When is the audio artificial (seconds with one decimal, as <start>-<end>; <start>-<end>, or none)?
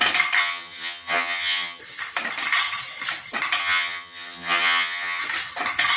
0.4-1.8; 3.6-5.2